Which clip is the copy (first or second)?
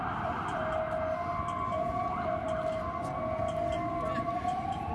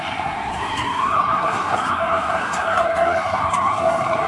second